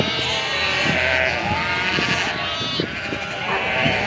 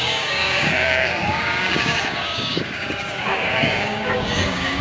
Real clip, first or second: first